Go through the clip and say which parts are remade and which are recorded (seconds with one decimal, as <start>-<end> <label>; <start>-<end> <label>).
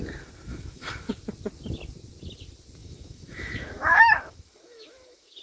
0.0-0.5 recorded; 0.5-1.1 remade; 1.1-2.8 recorded; 2.8-5.4 remade